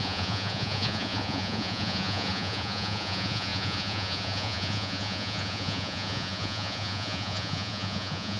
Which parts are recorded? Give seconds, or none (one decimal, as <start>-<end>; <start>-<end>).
none